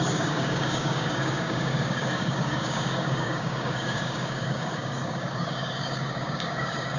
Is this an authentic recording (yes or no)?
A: no